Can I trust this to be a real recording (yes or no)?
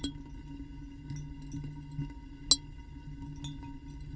yes